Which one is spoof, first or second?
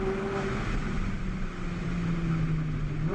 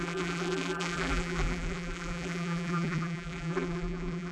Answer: second